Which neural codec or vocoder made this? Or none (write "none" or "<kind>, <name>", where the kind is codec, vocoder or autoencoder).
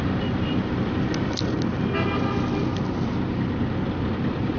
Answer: none